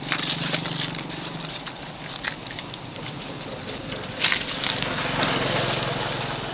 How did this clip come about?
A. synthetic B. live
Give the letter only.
B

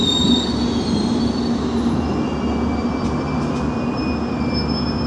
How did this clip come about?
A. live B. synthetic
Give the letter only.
A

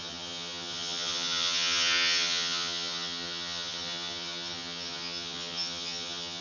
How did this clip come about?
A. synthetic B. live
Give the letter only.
A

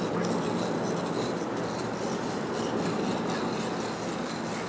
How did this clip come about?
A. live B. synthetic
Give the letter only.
A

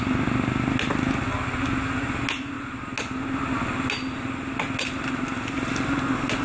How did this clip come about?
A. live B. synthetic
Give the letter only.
A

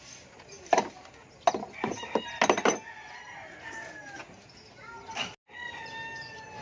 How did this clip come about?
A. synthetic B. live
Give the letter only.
B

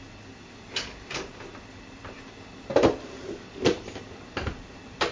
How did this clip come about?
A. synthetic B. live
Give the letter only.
B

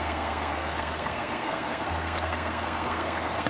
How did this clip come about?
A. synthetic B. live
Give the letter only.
A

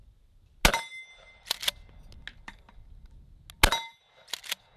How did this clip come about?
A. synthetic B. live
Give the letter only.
B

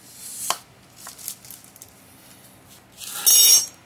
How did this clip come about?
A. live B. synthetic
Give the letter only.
A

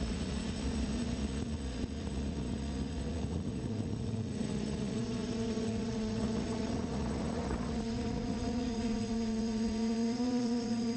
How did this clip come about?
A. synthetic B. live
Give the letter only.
A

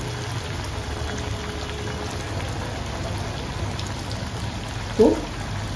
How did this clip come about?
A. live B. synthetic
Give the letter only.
A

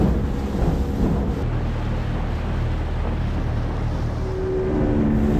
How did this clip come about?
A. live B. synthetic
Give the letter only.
A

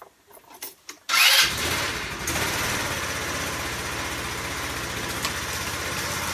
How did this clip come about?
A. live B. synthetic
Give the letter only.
A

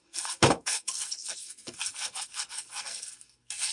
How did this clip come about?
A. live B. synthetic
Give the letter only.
B